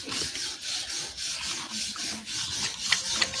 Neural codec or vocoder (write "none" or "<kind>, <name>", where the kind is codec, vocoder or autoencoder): none